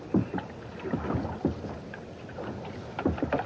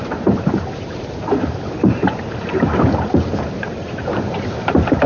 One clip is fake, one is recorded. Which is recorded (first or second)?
first